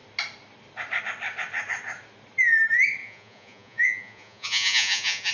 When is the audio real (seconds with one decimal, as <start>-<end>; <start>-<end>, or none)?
0.0-3.0